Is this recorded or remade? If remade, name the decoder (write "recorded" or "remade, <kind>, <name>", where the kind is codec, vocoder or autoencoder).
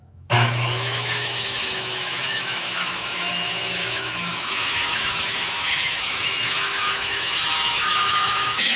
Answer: remade, autoencoder, DAC-VAE